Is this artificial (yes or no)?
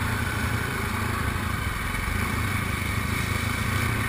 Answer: yes